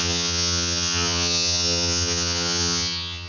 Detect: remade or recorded remade